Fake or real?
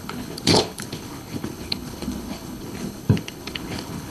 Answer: fake